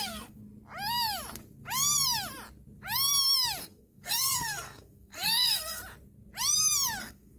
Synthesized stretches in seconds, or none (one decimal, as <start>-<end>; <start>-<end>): 0.0-0.4; 3.6-5.8; 7.0-7.4